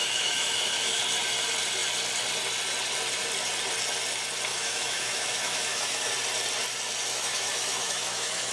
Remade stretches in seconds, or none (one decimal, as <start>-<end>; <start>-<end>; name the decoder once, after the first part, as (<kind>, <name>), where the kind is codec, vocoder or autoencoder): 0.0-1.0 (autoencoder, DAC-VAE); 4.5-6.1; 7.1-8.5